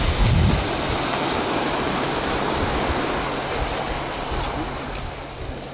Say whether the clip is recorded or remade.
recorded